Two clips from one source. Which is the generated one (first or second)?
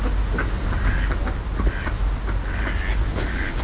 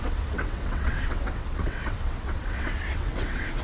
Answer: second